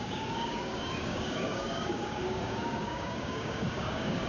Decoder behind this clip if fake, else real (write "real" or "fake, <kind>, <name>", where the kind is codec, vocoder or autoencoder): fake, codec, DAC